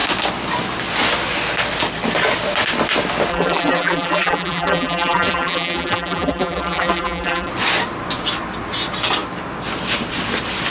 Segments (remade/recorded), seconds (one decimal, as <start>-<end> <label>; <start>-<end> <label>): 0.0-3.3 recorded; 3.3-7.5 remade; 7.5-10.7 recorded